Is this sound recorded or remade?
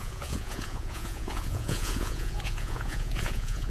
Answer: remade